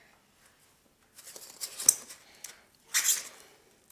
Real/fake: real